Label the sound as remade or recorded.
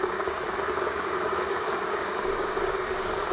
remade